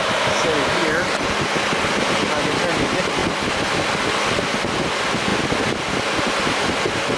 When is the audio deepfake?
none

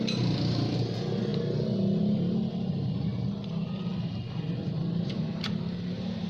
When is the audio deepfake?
none

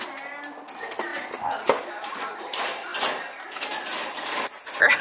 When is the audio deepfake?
none

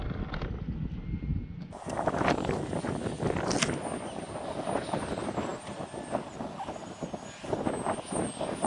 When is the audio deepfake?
none